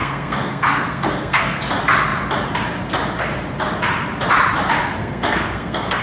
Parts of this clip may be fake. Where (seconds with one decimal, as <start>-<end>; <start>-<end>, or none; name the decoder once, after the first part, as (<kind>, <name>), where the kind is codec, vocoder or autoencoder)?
0.0-1.6 (codec, SNAC); 5.0-6.0